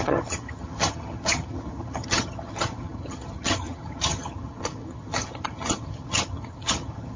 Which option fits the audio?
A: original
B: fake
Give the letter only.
B